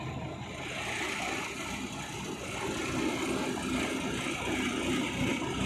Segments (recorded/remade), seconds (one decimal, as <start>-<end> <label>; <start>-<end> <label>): 0.0-5.7 recorded